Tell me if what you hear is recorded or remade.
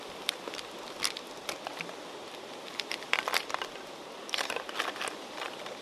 recorded